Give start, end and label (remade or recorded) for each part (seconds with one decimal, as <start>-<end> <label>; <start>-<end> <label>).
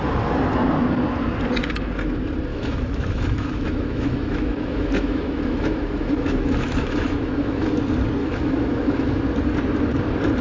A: 0.0-2.5 recorded; 2.5-7.8 remade; 7.8-8.2 recorded; 8.2-9.2 remade; 9.2-10.4 recorded